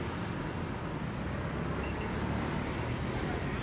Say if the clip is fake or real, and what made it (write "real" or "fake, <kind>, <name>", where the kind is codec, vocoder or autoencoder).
real